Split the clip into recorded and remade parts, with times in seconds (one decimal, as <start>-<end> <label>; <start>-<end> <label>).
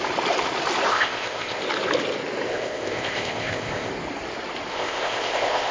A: 0.0-0.9 recorded; 0.9-1.6 remade; 1.6-2.5 recorded; 2.5-3.9 remade; 3.9-4.7 recorded; 4.7-5.7 remade